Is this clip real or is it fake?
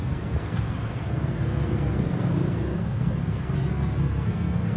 fake